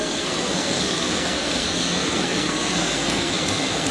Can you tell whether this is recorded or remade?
remade